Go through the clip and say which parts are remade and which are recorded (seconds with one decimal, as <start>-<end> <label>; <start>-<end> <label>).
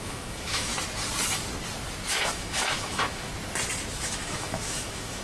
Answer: 0.0-0.7 remade; 0.7-2.1 recorded; 2.1-3.3 remade; 3.3-3.9 recorded; 3.9-5.2 remade